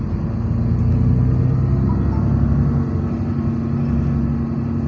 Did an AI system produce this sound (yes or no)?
no